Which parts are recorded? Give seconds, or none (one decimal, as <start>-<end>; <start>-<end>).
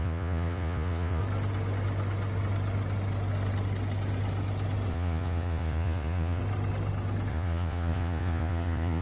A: 1.2-4.9; 6.4-7.3